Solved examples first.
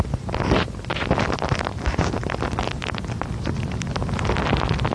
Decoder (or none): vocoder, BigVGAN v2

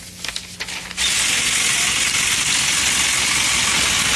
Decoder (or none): none